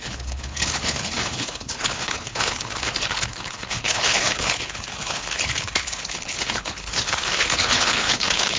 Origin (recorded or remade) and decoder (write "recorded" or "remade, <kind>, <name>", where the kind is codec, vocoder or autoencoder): remade, codec, HILCodec